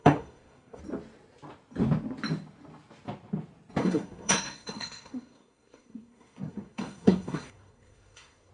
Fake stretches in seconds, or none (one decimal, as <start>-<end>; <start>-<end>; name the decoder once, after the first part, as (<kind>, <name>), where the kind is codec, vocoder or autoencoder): 0.0-0.8 (codec, SNAC); 3.8-8.5